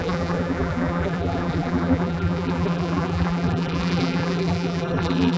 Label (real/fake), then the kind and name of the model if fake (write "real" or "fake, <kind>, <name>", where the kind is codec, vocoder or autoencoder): fake, vocoder, BigVGAN v2